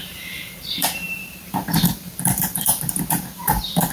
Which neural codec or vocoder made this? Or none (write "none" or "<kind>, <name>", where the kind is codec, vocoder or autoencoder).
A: vocoder, BigVGAN v2